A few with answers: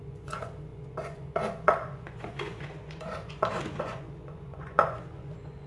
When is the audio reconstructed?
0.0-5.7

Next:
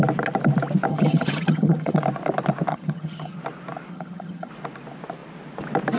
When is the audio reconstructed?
0.9-2.0; 2.7-3.4; 3.9-4.5

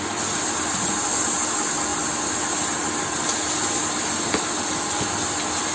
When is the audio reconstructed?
none

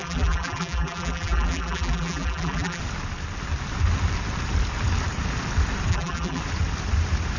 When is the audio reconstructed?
0.0-2.8; 5.9-6.4

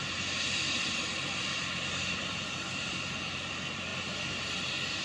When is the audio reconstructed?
0.0-3.9

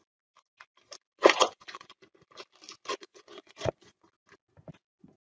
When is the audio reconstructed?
1.2-1.9; 2.9-4.0

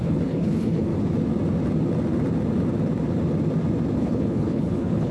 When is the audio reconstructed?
0.0-0.9; 4.0-5.1